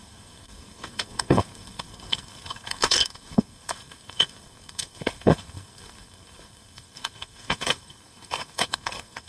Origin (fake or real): fake